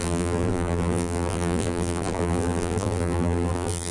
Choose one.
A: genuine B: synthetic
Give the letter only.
B